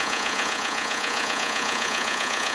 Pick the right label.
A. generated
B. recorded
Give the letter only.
A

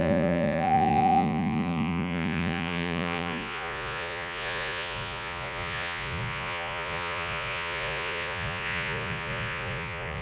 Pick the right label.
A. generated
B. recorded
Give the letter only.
A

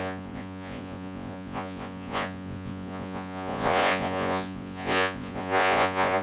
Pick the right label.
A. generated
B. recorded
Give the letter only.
A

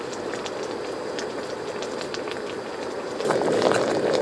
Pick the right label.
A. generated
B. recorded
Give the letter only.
B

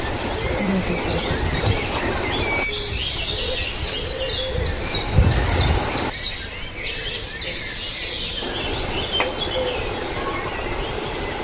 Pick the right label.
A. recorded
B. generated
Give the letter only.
A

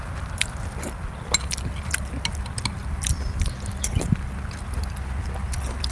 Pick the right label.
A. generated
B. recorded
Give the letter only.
B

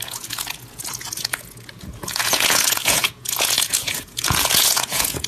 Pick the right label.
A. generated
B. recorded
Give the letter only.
A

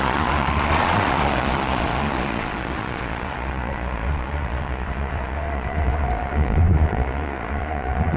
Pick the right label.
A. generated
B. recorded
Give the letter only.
A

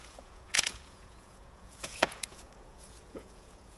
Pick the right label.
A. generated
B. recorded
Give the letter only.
A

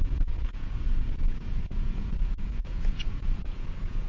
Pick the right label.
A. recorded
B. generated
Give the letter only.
B